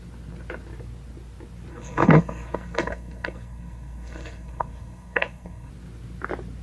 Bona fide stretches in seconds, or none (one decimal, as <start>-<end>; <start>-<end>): 0.0-1.7; 5.7-6.6